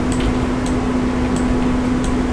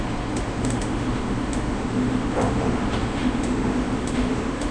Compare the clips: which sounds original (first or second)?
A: first